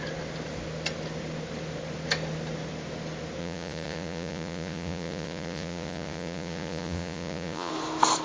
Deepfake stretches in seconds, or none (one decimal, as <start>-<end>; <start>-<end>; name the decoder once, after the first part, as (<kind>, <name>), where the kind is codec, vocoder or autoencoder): 3.4-7.7 (vocoder, Vocos)